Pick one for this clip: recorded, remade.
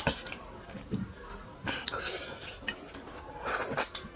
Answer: recorded